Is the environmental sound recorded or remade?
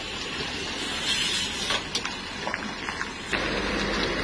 recorded